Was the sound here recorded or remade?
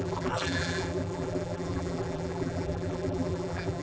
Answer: remade